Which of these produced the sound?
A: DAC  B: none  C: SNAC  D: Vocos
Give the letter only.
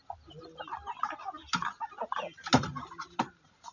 B